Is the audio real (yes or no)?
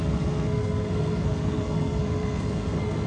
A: no